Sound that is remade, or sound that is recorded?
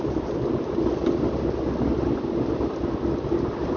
recorded